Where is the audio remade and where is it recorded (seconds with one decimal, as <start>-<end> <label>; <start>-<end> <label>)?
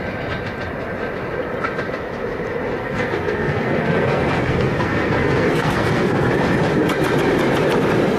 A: 0.0-2.8 recorded; 2.8-6.3 remade; 6.3-8.2 recorded